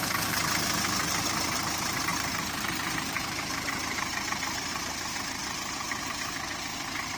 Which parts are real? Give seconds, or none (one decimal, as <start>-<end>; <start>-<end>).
none